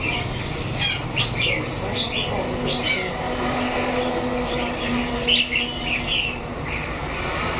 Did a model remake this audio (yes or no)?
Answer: no